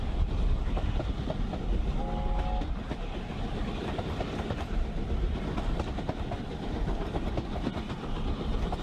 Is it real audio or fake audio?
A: real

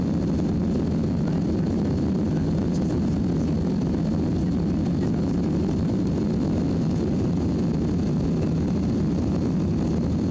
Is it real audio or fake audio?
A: real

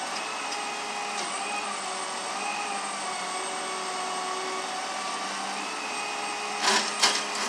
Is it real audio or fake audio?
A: real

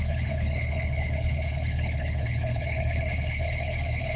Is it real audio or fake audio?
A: fake